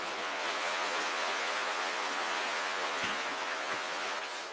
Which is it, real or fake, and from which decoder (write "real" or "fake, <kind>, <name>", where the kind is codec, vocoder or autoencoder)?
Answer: fake, vocoder, Vocos